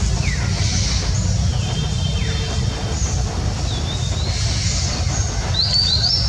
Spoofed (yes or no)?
no